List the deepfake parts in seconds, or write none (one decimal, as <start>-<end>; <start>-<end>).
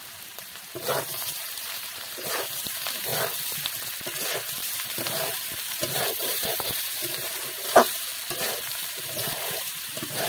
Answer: 0.0-3.1; 4.4-8.1; 8.7-10.3